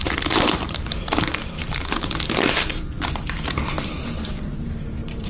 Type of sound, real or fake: fake